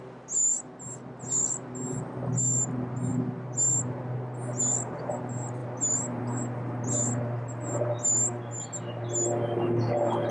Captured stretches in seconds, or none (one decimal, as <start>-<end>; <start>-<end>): 0.0-10.3